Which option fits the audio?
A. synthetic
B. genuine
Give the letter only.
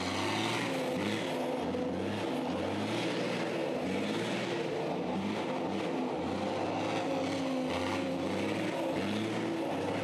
B